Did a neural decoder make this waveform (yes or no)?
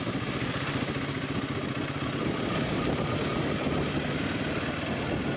no